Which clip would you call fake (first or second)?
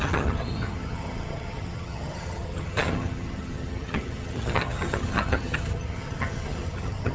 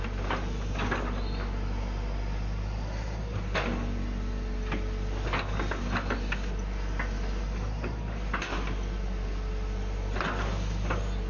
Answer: first